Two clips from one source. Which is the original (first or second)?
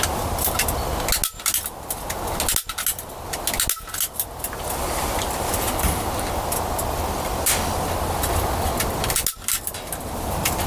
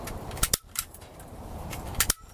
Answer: first